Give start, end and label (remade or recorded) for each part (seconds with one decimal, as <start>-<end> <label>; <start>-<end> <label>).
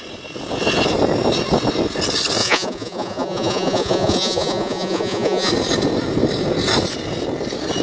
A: 0.0-2.4 recorded; 2.4-5.5 remade; 5.5-7.8 recorded